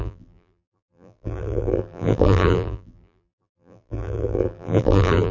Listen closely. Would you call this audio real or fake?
fake